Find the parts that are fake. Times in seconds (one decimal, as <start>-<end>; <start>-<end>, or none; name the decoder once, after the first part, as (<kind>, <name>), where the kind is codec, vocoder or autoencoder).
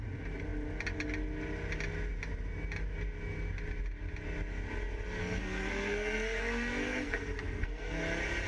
5.2-8.0 (codec, SNAC)